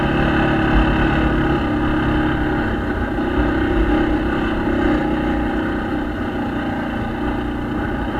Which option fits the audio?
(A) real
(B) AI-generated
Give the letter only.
A